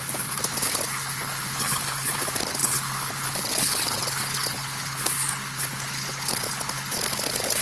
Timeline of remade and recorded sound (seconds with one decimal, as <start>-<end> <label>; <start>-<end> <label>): 0.0-7.6 remade